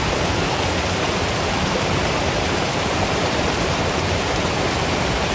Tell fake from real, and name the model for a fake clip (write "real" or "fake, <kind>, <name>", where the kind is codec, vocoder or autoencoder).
fake, vocoder, BigVGAN v2